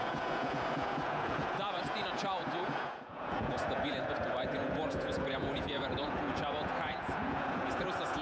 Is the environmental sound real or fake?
fake